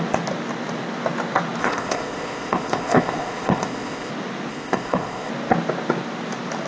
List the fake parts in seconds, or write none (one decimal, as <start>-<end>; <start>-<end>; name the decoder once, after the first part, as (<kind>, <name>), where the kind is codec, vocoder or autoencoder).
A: 1.6-4.1 (codec, ZipCodec); 4.5-5.3